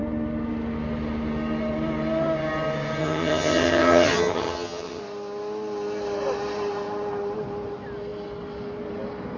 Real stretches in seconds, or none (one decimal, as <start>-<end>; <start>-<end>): 0.0-3.0; 5.0-9.4